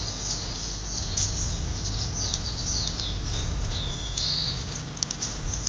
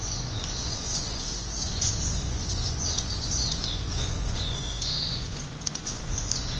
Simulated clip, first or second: second